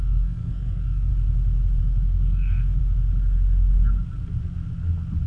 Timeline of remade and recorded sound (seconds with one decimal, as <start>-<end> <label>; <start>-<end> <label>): 0.0-1.1 remade; 1.1-1.8 recorded; 1.8-2.8 remade; 2.8-5.3 recorded